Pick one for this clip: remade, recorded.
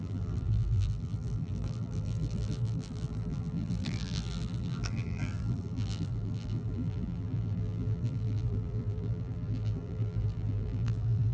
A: remade